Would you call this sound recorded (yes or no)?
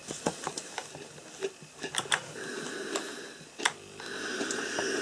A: yes